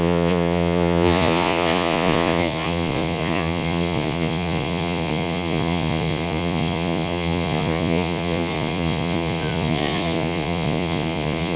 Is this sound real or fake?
fake